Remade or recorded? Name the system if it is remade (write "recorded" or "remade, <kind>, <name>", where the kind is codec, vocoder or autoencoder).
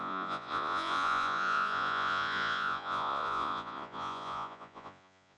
remade, vocoder, Vocos